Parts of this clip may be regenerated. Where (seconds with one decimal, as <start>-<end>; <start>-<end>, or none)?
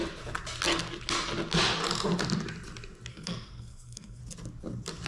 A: 3.1-4.2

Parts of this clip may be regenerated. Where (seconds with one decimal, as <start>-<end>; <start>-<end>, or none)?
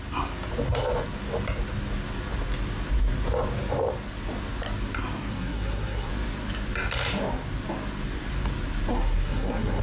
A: 5.3-6.1; 8.9-9.8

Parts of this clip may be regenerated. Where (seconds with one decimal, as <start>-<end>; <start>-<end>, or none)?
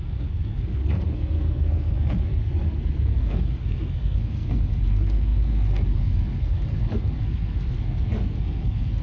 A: 0.0-9.0